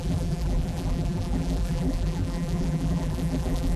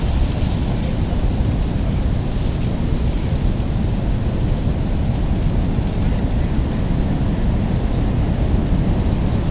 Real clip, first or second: second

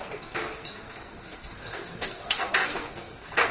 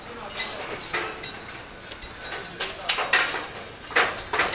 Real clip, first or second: second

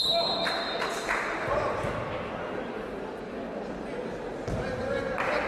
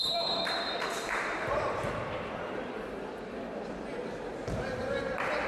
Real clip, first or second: first